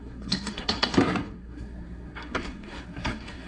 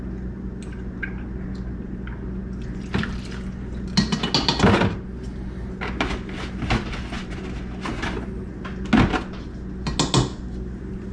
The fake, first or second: first